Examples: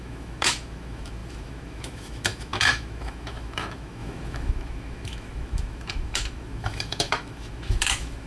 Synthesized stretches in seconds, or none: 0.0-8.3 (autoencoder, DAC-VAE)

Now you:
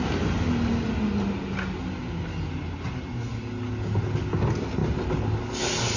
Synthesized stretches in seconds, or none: none

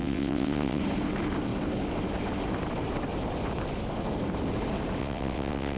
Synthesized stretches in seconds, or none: 0.0-0.8 (vocoder, WaveNeXt); 5.0-5.8

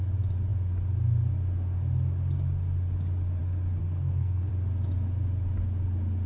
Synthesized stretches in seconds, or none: 3.8-4.5 (codec, SNAC)

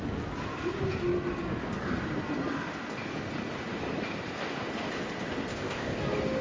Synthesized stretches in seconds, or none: 5.5-6.0 (codec, ZipCodec)

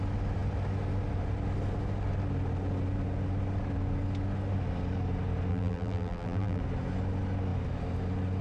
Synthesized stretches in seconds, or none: 5.5-6.6 (vocoder, BigVGAN v2)